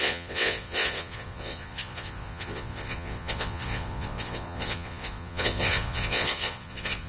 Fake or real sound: fake